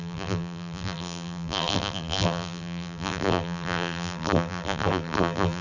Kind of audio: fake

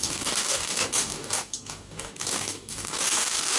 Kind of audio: fake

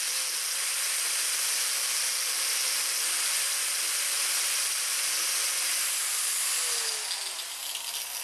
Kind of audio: real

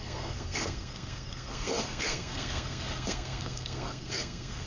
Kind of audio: fake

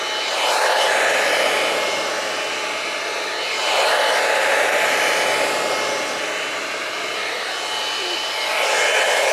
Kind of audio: real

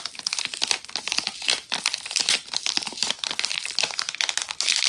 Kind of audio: real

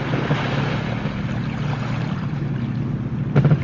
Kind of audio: real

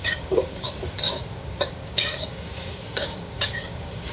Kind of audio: fake